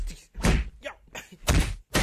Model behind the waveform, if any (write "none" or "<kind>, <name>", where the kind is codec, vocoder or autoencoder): none